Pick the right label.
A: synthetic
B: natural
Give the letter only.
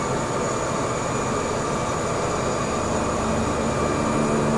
B